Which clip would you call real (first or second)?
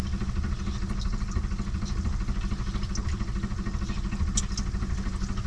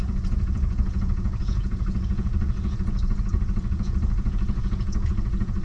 first